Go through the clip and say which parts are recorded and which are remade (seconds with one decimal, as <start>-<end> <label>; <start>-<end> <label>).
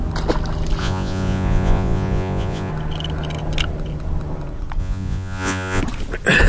0.0-0.8 recorded; 0.8-2.7 remade; 2.7-4.8 recorded; 4.8-5.8 remade; 5.8-6.5 recorded